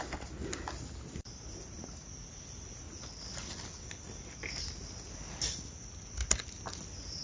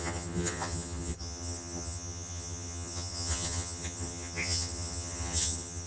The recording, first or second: first